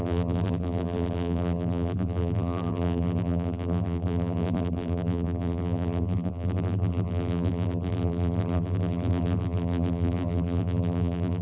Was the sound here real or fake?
fake